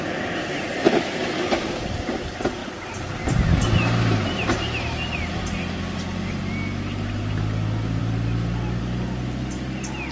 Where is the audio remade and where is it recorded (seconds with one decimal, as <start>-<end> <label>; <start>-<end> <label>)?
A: 0.0-10.1 recorded